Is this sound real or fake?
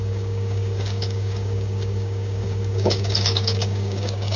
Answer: fake